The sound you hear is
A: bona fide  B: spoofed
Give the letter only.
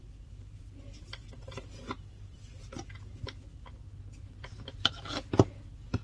A